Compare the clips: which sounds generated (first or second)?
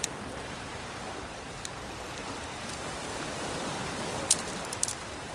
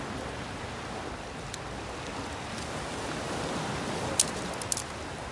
first